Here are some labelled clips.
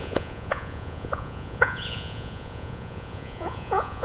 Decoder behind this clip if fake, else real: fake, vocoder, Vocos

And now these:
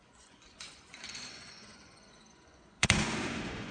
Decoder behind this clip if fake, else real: fake, vocoder, Vocos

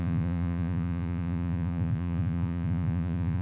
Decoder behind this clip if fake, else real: fake, vocoder, Vocos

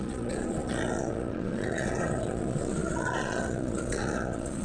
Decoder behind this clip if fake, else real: fake, vocoder, Vocos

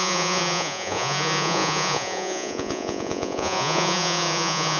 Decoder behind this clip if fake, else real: fake, vocoder, Vocos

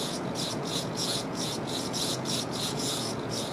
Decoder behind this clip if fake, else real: fake, vocoder, Vocos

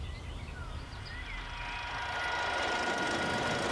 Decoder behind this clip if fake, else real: real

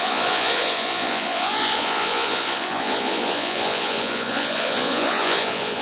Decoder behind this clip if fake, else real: fake, vocoder, Vocos